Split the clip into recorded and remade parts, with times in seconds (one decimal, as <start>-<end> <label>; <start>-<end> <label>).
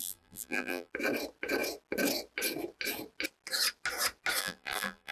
0.0-0.9 remade; 0.9-4.4 recorded; 4.4-5.1 remade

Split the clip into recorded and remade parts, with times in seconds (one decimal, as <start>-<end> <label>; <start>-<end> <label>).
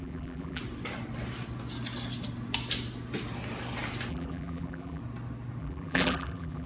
0.0-0.6 remade; 0.6-4.1 recorded; 4.1-5.0 remade; 5.0-5.6 recorded; 5.6-6.7 remade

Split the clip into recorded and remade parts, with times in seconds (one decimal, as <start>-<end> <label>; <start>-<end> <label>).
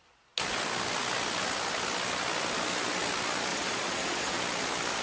0.0-3.5 recorded; 3.5-4.4 remade; 4.4-5.0 recorded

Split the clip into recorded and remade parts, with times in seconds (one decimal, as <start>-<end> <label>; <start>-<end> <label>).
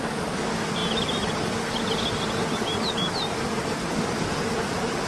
0.0-5.1 recorded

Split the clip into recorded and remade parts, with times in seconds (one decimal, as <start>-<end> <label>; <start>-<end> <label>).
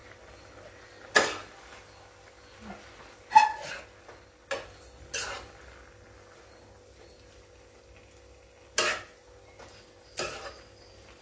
0.0-11.2 recorded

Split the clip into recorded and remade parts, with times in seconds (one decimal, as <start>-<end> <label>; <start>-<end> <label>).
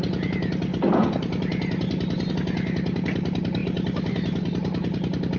0.0-5.4 recorded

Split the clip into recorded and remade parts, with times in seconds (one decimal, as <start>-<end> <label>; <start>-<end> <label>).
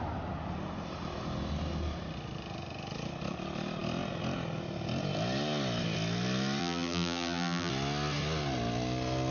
0.0-6.6 recorded; 6.6-7.7 remade; 7.7-9.3 recorded